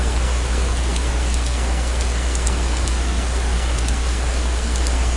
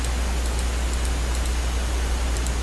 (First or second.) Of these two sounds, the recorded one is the second